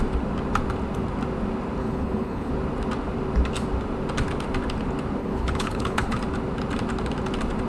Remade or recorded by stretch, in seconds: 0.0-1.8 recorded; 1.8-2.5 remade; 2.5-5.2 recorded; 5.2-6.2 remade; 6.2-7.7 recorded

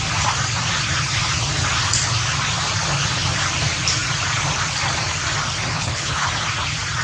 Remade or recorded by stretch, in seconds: 0.0-5.7 recorded; 5.7-6.3 remade; 6.3-7.0 recorded